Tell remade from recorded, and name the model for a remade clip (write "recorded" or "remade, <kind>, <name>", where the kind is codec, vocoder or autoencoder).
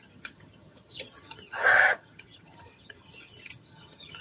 remade, vocoder, HiFi-GAN